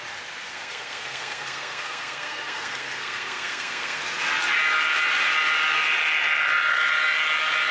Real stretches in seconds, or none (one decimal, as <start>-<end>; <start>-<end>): 0.0-0.5; 4.0-7.7